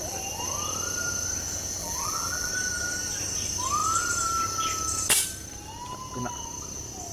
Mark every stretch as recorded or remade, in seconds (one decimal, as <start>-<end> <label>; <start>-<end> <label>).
0.0-1.8 recorded; 1.8-2.5 remade; 2.5-7.1 recorded

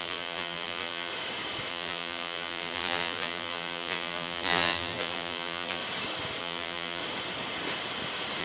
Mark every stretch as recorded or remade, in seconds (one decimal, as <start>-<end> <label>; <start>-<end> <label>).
0.0-1.1 remade; 1.1-1.7 recorded; 1.7-5.8 remade; 5.8-6.4 recorded; 6.4-7.0 remade; 7.0-8.4 recorded

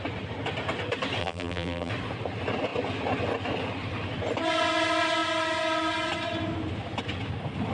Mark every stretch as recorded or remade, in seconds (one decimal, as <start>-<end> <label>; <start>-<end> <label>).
0.0-1.2 recorded; 1.2-1.9 remade; 1.9-7.7 recorded

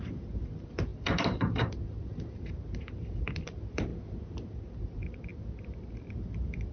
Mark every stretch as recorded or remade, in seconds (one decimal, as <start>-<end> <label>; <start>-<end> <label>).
0.0-3.9 remade; 3.9-4.8 recorded; 4.8-5.3 remade; 5.3-5.9 recorded; 5.9-6.7 remade